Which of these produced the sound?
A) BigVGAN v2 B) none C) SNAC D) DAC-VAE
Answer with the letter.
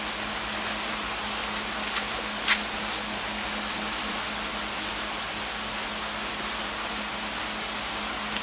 B